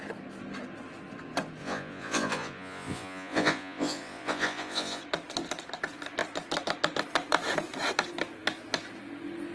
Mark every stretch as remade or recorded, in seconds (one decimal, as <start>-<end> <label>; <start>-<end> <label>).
0.0-1.6 recorded; 1.6-5.0 remade; 5.0-9.5 recorded